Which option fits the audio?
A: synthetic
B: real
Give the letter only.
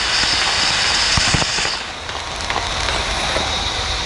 B